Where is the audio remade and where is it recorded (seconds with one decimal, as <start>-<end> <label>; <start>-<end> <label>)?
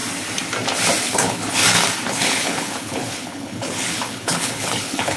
0.0-1.0 recorded; 1.0-1.6 remade; 1.6-2.1 recorded; 2.1-5.2 remade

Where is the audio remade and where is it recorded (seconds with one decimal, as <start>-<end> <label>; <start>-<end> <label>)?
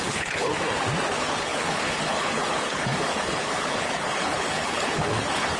0.0-0.5 remade; 0.5-1.1 recorded; 1.1-5.6 remade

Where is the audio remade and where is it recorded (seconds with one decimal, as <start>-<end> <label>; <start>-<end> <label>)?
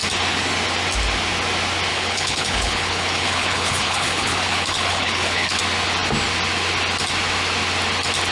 0.0-1.9 recorded; 1.9-5.6 remade; 5.6-8.3 recorded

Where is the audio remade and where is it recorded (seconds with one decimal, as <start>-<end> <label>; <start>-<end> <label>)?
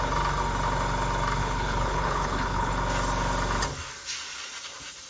0.0-1.4 recorded; 1.4-2.7 remade; 2.7-5.1 recorded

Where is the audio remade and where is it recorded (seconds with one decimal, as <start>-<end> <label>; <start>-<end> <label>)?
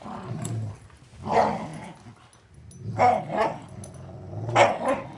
0.0-5.2 recorded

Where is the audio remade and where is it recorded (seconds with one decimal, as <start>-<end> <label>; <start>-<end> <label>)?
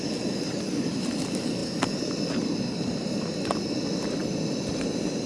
0.0-5.3 recorded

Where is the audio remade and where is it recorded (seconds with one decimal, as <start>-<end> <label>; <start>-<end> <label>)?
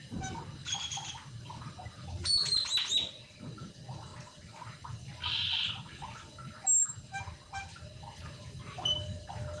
0.0-9.6 recorded